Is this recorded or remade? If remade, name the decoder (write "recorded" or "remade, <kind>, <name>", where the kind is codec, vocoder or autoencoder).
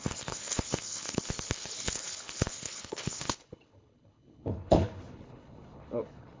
remade, codec, HILCodec